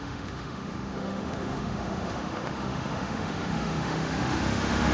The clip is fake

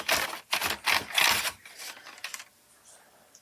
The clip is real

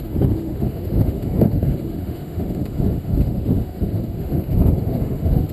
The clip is fake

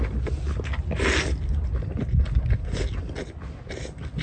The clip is real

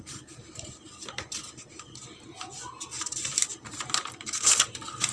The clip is real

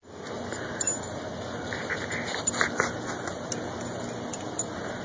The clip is real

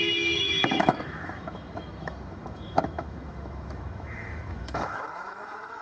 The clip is fake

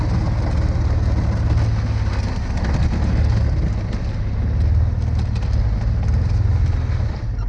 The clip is real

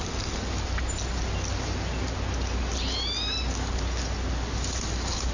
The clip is real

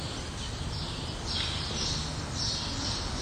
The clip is real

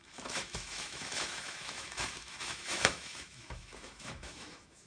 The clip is fake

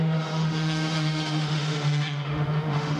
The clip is fake